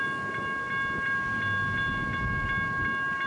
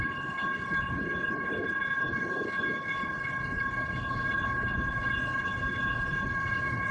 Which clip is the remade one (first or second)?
second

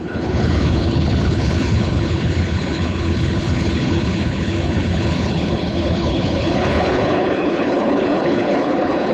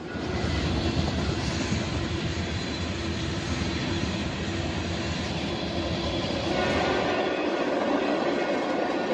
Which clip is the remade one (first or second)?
first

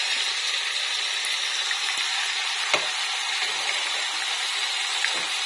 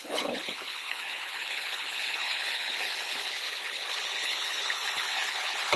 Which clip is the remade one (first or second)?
second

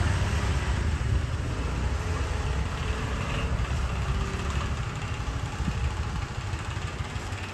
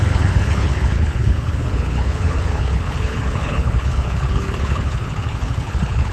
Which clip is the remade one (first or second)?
second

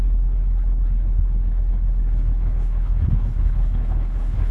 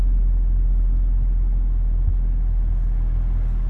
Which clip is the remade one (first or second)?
first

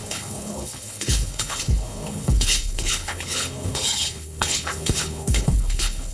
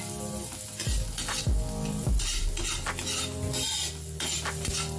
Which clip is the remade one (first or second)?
first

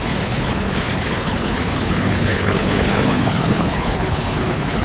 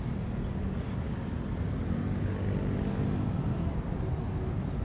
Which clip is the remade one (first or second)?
first